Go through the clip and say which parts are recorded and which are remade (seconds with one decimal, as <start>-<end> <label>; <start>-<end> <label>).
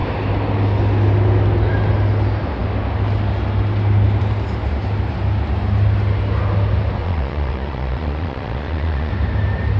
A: 0.0-7.0 recorded; 7.0-9.1 remade; 9.1-9.8 recorded